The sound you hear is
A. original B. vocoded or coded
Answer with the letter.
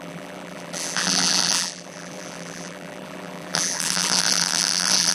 B